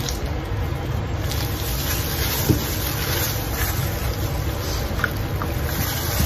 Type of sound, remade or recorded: recorded